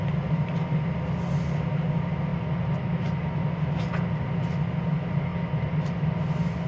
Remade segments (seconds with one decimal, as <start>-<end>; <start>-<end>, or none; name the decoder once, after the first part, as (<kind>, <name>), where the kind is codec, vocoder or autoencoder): none